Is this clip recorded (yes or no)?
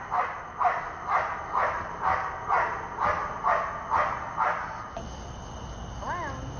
yes